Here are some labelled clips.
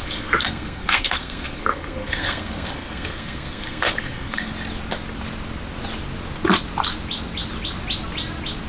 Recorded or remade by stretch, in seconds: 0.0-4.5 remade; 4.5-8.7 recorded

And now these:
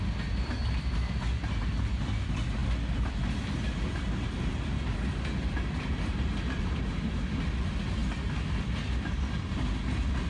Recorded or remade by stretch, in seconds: 0.0-10.3 recorded

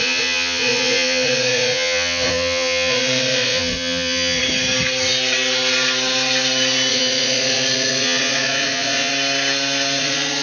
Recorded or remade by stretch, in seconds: 0.0-4.4 remade; 4.4-6.9 recorded; 6.9-9.1 remade; 9.1-10.0 recorded; 10.0-10.4 remade

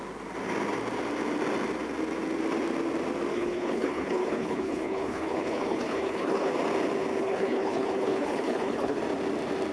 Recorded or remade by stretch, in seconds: 0.0-3.3 recorded; 3.3-6.5 remade; 6.5-7.2 recorded; 7.2-9.0 remade; 9.0-9.7 recorded

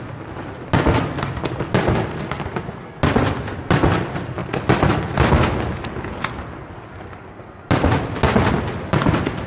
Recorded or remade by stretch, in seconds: 0.0-9.5 recorded

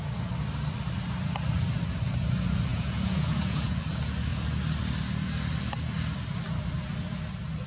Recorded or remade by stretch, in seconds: 0.0-2.7 recorded; 2.7-3.8 remade; 3.8-7.7 recorded